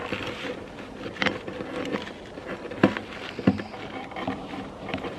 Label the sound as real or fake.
fake